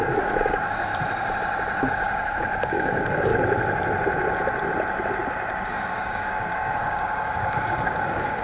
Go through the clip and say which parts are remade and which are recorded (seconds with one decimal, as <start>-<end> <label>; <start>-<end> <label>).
0.0-0.9 remade; 0.9-1.9 recorded; 1.9-3.3 remade; 3.3-5.7 recorded; 5.7-8.4 remade